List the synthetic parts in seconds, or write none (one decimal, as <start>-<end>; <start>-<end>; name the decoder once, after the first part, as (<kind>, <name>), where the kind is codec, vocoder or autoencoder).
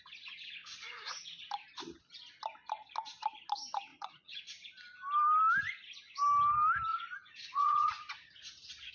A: 0.6-1.4 (vocoder, Vocos); 3.9-4.4; 6.9-8.9